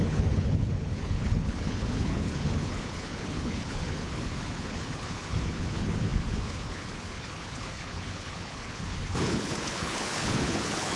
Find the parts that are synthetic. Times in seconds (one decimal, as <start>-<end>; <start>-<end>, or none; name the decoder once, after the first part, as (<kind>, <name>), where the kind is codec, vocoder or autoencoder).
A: 0.0-11.0 (codec, HILCodec)